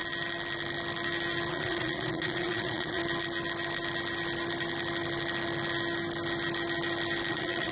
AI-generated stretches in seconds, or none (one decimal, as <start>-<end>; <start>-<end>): 1.5-3.0; 7.3-7.7